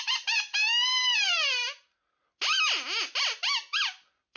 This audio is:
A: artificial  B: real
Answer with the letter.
B